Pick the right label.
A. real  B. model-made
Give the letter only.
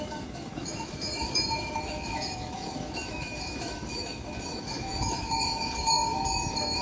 B